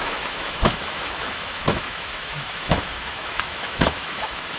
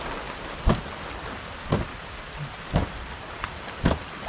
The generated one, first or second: first